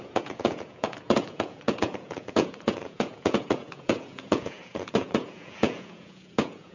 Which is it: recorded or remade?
remade